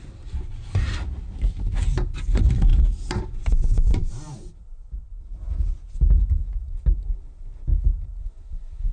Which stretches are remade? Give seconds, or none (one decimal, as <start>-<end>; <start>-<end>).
none